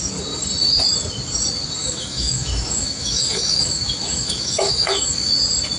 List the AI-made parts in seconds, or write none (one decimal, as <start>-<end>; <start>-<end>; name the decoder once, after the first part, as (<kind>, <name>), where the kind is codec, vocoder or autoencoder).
1.8-5.3 (autoencoder, DAC-VAE)